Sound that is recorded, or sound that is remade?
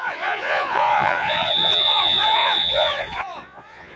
remade